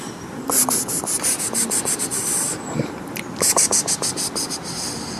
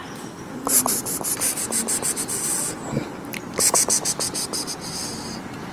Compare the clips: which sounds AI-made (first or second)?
first